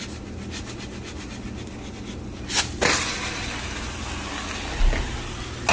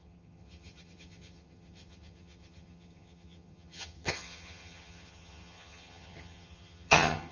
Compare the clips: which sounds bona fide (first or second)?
first